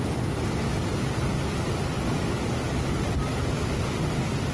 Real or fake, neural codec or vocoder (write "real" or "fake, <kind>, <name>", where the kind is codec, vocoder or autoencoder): real